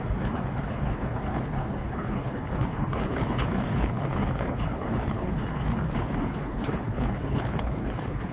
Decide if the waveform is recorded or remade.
remade